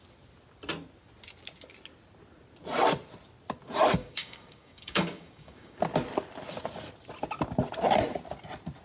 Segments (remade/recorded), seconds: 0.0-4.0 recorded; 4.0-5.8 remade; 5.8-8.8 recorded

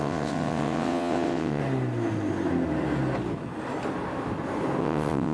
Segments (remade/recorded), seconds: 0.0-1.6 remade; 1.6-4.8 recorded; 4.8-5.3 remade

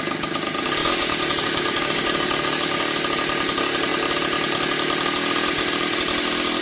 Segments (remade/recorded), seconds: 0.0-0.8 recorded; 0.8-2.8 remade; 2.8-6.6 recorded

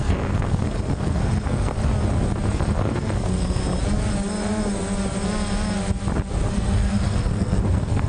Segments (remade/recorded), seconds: 0.0-1.9 remade; 1.9-2.5 recorded; 2.5-3.6 remade; 3.6-6.5 recorded; 6.5-8.1 remade

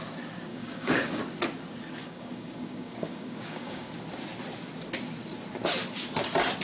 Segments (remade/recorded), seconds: 0.0-0.5 recorded; 0.5-1.2 remade; 1.2-2.0 recorded; 2.0-3.9 remade; 3.9-6.6 recorded

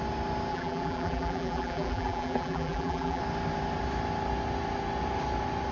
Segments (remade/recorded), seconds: 0.0-0.5 recorded; 0.5-3.2 remade; 3.2-5.7 recorded